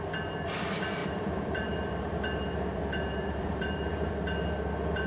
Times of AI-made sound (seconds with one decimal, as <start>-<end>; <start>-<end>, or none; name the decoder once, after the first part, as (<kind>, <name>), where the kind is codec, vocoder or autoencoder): 1.0-4.1 (vocoder, BigVGAN v2)